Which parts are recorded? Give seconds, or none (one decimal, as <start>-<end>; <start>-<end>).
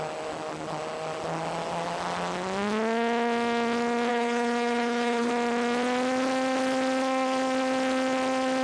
0.0-4.1; 5.3-8.6